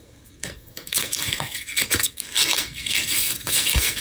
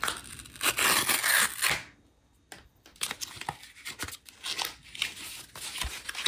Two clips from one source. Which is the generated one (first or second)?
first